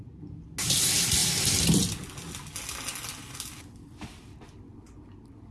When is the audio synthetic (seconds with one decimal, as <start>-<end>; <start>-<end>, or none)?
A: none